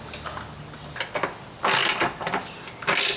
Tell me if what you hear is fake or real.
real